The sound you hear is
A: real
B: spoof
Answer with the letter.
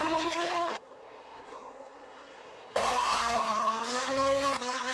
B